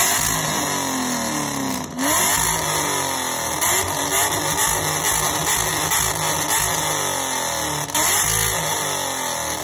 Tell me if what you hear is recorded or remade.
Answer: recorded